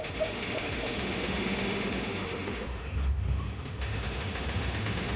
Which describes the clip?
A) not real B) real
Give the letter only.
A